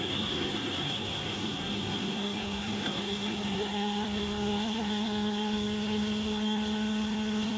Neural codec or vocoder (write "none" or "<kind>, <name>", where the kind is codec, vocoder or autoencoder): codec, SNAC